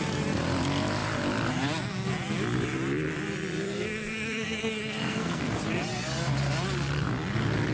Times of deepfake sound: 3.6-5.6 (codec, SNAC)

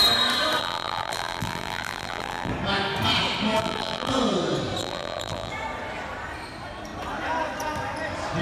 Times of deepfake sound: 0.6-2.5 (vocoder, BigVGAN v2); 3.6-4.1; 4.8-5.5

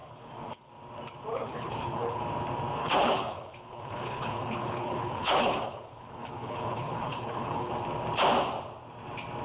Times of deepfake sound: 0.0-0.7 (codec, HILCodec); 1.3-2.2; 2.8-7.7

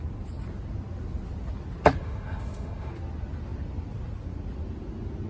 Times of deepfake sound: 2.0-2.9 (autoencoder, DAC-VAE)